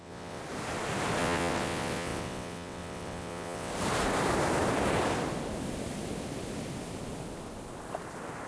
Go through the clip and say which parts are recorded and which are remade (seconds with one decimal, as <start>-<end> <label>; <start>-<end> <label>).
0.0-0.4 remade; 0.4-1.2 recorded; 1.2-3.7 remade; 3.7-8.5 recorded